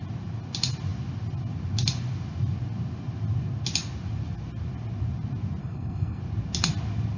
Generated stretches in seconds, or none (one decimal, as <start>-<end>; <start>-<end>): 5.6-6.2